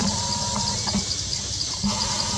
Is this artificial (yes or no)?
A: no